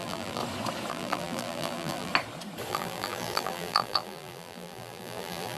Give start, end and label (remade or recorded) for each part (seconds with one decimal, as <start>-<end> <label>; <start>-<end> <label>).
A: 0.0-0.4 remade; 0.4-0.9 recorded; 0.9-2.1 remade; 2.1-2.7 recorded; 2.7-5.6 remade